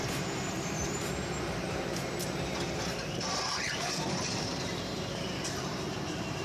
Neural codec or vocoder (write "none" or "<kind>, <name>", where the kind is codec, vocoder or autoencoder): vocoder, BigVGAN v2